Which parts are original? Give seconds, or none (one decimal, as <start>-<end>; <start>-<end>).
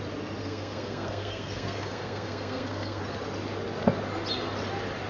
0.0-0.4; 3.0-5.1